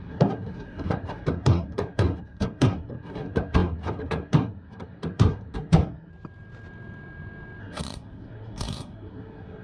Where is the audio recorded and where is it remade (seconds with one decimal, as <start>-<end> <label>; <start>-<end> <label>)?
0.0-6.1 remade; 6.1-7.6 recorded; 7.6-9.6 remade